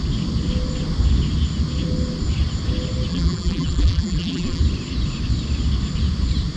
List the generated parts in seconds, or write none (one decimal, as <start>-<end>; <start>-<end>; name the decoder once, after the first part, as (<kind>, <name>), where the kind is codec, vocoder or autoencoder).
3.1-4.6 (vocoder, BigVGAN v2)